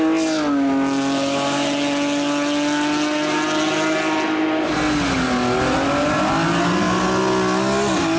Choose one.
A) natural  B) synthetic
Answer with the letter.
A